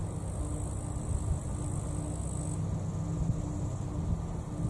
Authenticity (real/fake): real